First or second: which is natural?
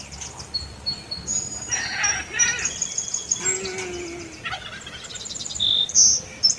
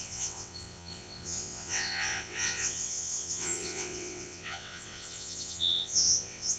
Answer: first